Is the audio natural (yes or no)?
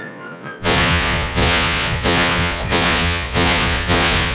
no